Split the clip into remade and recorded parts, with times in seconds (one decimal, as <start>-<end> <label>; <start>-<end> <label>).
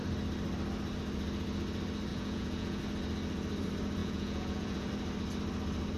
0.0-2.1 recorded; 2.1-2.8 remade; 2.8-4.0 recorded; 4.0-4.9 remade; 4.9-6.0 recorded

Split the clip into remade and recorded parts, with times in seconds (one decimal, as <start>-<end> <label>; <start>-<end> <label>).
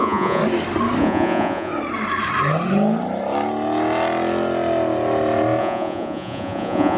0.0-0.4 remade; 0.4-1.0 recorded; 1.0-1.7 remade; 1.7-5.6 recorded; 5.6-7.0 remade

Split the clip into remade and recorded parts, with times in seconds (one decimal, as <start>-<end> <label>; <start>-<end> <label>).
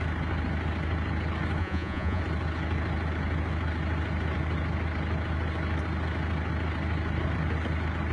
0.0-1.6 recorded; 1.6-2.2 remade; 2.2-8.1 recorded